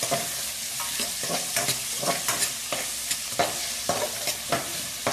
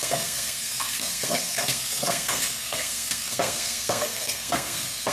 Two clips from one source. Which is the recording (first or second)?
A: first